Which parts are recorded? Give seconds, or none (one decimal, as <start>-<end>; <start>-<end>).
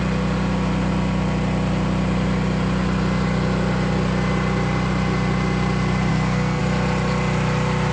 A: 0.0-6.1; 6.6-7.9